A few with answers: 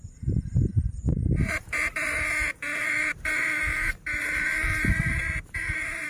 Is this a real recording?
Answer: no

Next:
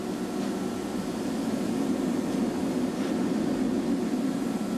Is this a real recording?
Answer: yes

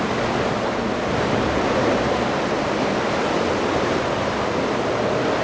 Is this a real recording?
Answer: yes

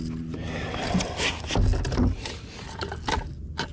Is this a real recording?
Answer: yes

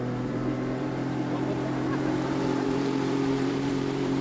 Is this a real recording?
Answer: no